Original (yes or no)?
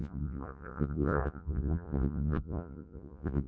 no